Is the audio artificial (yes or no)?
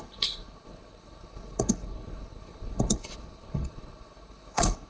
yes